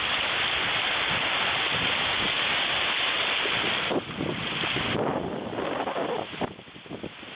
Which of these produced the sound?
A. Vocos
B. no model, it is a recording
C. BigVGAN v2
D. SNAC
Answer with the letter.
B